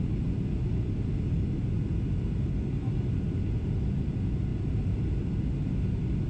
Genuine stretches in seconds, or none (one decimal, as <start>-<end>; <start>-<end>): 0.0-2.8; 3.4-4.5; 5.4-6.3